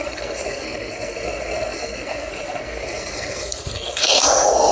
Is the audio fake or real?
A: fake